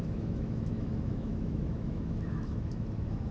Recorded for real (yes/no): no